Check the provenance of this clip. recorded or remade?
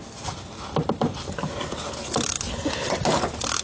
recorded